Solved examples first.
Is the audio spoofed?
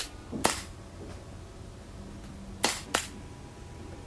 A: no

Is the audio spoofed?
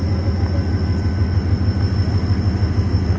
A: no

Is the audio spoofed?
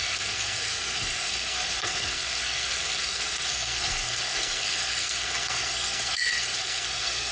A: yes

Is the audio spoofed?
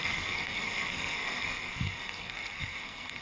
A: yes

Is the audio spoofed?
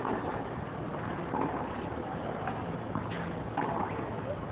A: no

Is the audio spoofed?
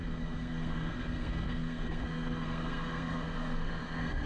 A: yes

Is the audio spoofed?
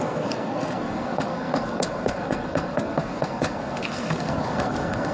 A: yes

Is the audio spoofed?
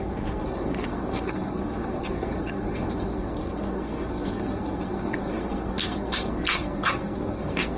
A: yes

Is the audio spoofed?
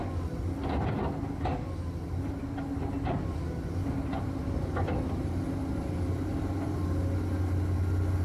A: no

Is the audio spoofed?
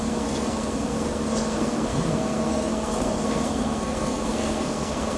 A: yes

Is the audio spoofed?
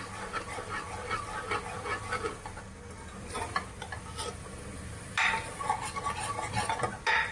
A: no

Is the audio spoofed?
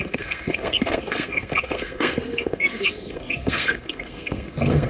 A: yes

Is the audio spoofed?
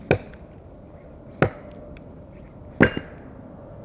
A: no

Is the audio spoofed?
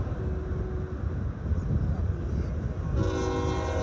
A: no